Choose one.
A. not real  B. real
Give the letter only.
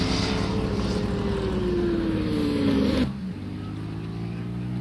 B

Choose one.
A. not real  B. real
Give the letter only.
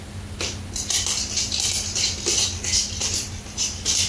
B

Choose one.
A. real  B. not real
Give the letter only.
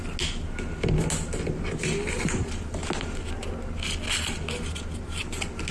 A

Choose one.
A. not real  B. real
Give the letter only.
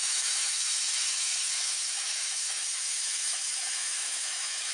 A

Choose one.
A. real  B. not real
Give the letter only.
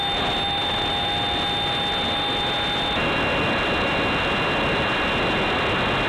A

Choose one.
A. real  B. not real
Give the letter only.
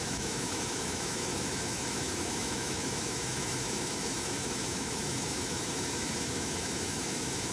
B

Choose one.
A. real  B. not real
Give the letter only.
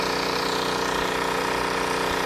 A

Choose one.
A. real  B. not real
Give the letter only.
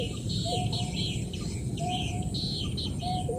A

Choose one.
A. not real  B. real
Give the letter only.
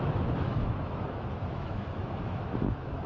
A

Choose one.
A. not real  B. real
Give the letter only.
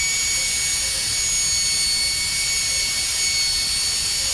B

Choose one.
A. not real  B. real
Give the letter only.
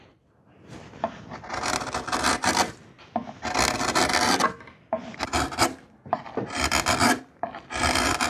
B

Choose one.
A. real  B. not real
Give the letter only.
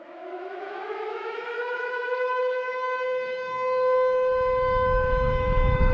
B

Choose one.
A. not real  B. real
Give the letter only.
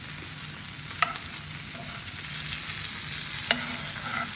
B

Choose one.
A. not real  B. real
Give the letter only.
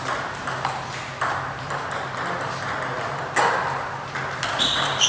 B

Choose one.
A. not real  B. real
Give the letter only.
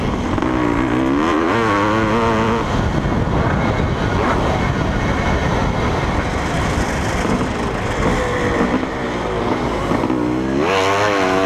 B